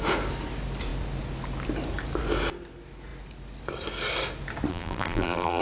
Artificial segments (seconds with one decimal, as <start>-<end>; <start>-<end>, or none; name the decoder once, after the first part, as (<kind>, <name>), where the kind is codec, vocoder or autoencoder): 4.7-5.6 (vocoder, BigVGAN v2)